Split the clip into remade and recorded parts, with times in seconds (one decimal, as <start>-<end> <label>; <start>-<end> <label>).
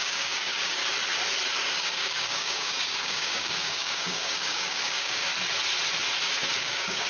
0.0-0.8 remade; 0.8-1.7 recorded; 1.7-5.3 remade; 5.3-6.6 recorded; 6.6-7.1 remade